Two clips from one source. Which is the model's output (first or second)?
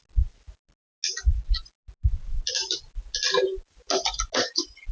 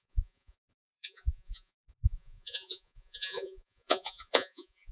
second